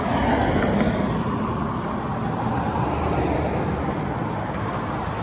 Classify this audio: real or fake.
real